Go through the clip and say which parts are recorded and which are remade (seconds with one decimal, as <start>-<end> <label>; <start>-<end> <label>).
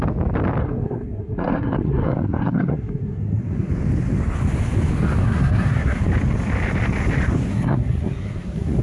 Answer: 0.0-0.6 recorded; 0.6-3.7 remade; 3.7-5.2 recorded; 5.2-6.0 remade; 6.0-7.5 recorded; 7.5-8.8 remade